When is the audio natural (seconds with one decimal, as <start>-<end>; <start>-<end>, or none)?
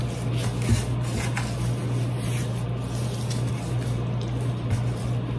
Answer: 0.0-5.4